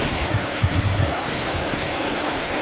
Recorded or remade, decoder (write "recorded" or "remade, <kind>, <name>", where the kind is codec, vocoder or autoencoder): remade, codec, SNAC